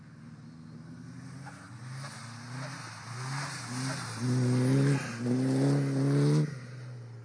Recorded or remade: recorded